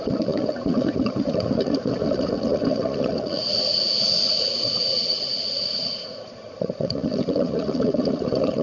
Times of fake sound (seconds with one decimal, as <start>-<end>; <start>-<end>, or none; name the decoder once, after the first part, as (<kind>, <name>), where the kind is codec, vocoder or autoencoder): 0.0-8.6 (vocoder, Vocos)